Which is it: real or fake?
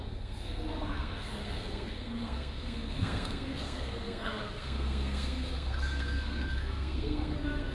fake